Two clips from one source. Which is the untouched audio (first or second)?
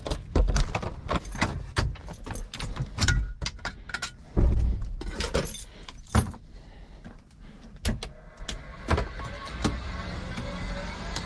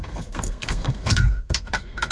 first